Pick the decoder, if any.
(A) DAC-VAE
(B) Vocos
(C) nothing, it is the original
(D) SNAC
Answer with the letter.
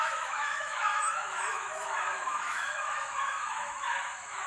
A